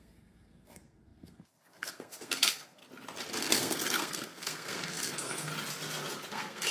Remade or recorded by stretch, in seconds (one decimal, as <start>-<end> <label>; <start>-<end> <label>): 0.0-2.8 remade; 2.8-3.3 recorded; 3.3-5.5 remade; 5.5-6.3 recorded; 6.3-6.7 remade